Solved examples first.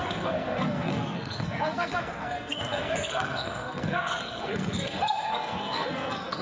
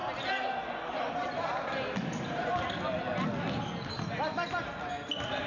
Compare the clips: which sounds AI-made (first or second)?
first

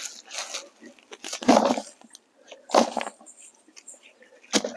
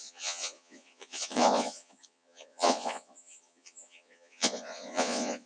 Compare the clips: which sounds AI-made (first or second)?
second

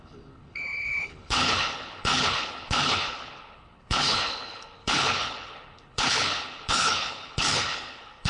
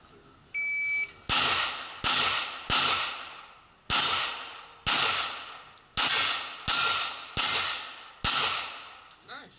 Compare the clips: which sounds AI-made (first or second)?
first